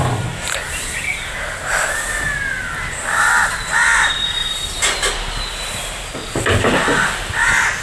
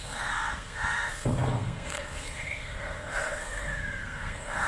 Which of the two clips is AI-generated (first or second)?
second